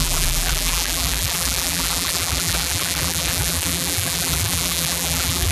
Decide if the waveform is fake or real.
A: fake